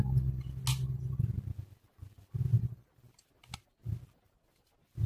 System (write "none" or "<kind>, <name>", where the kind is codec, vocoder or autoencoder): none